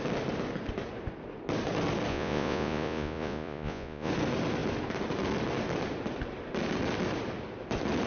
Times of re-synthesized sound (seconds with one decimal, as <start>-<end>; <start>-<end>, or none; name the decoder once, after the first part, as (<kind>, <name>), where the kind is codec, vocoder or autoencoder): 2.1-4.1 (vocoder, Vocos)